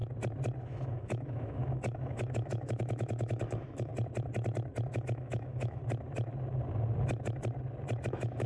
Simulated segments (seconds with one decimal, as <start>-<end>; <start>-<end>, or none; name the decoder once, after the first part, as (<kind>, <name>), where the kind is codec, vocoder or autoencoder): 0.6-3.9 (autoencoder, DAC-VAE); 4.9-5.8; 8.1-8.5